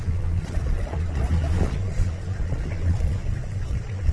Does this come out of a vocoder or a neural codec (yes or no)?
yes